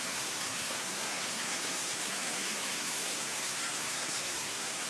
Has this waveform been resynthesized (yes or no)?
yes